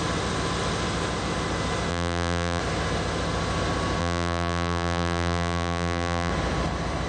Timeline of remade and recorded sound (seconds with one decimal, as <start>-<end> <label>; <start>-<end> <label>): 0.0-1.9 recorded; 1.9-2.6 remade; 2.6-4.0 recorded; 4.0-6.3 remade; 6.3-7.1 recorded